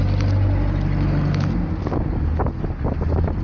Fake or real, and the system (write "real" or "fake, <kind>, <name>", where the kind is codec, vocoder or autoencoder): real